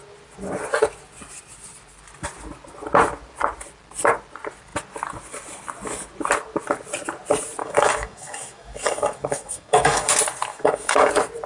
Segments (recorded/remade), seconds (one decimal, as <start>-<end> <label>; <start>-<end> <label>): 0.0-7.6 recorded; 7.6-10.1 remade; 10.1-10.5 recorded; 10.5-11.1 remade; 11.1-11.5 recorded